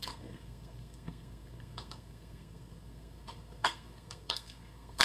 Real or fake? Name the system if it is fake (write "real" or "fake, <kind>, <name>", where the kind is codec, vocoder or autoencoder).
fake, codec, SNAC